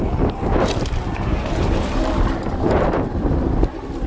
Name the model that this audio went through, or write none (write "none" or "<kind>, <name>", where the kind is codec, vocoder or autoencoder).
vocoder, BigVGAN v2